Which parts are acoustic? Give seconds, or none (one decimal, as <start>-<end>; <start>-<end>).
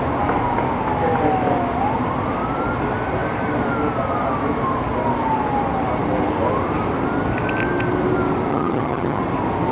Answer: 0.0-8.5; 9.2-9.7